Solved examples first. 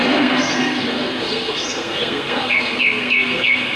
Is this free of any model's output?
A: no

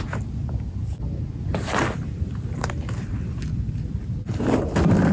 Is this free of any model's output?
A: yes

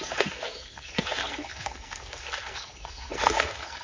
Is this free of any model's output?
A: no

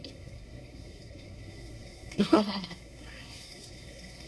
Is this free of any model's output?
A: no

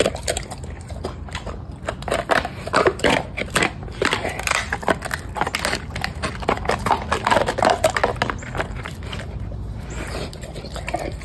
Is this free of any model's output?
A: yes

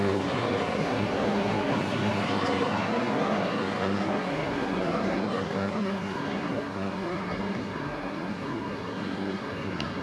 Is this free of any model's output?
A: no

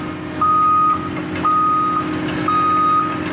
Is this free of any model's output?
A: yes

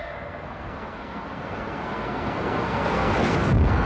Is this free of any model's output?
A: no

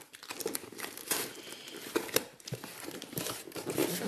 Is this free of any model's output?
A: yes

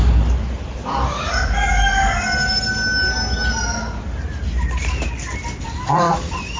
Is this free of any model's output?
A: yes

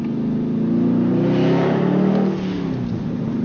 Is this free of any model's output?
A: yes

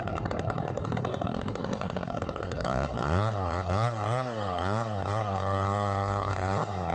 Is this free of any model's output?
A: no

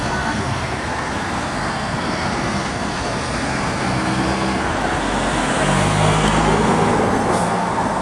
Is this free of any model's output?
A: no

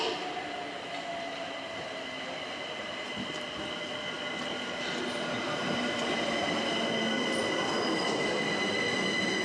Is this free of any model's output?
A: yes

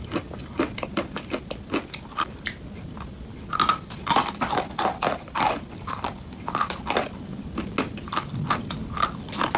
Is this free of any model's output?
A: yes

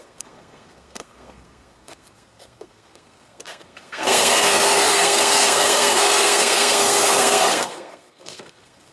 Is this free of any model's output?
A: no